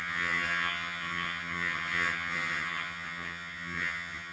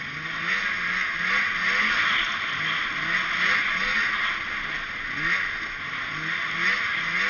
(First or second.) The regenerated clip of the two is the first